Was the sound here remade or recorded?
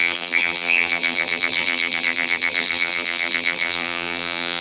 remade